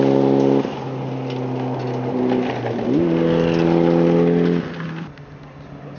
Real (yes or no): yes